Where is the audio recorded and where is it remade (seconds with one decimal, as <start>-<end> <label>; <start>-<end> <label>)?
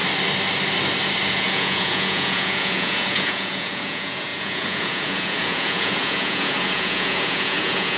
0.0-1.3 recorded; 1.3-8.0 remade